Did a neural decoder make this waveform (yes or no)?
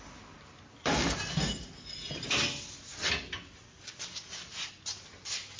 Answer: no